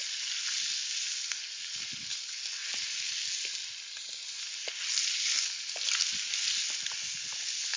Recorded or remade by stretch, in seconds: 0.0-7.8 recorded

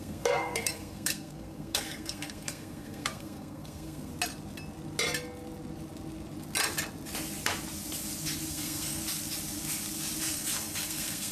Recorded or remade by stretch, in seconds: 0.0-4.1 remade; 4.1-8.5 recorded; 8.5-9.0 remade; 9.0-10.2 recorded; 10.2-11.3 remade

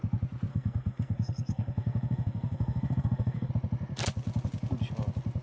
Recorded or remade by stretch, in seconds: 0.0-0.5 recorded; 0.5-3.5 remade; 3.5-5.4 recorded

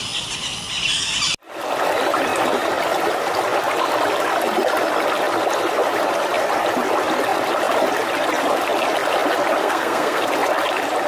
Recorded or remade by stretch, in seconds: 0.0-9.6 recorded; 9.6-10.2 remade; 10.2-11.1 recorded

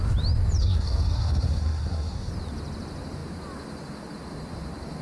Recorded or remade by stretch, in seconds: 0.0-0.6 recorded; 0.6-2.3 remade; 2.3-5.0 recorded

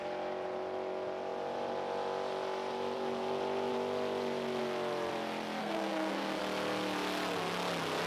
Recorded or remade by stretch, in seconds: 0.0-5.6 recorded; 5.6-6.4 remade; 6.4-8.1 recorded

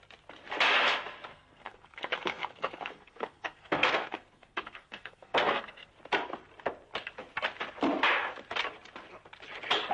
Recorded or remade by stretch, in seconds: 0.0-1.3 recorded; 1.3-5.9 remade; 5.9-9.9 recorded